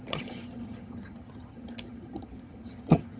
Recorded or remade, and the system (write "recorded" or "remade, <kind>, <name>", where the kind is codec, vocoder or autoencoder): remade, vocoder, HiFi-GAN